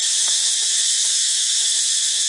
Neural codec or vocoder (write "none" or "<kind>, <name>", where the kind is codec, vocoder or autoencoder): autoencoder, DAC-VAE